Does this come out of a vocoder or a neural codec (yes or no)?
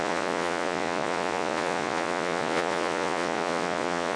yes